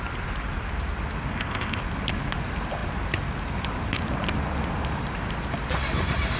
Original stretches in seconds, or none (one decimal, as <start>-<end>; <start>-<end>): 0.0-1.3; 1.8-6.4